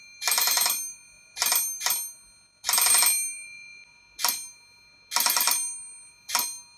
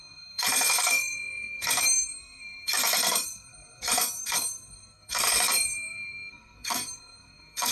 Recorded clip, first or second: first